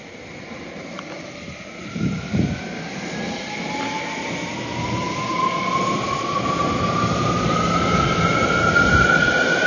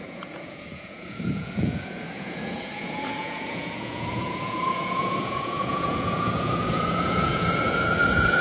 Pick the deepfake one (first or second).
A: second